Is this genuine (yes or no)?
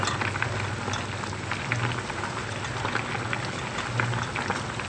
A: yes